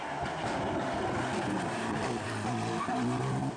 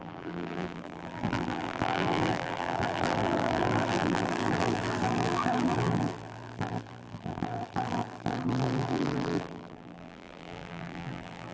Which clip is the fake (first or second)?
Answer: second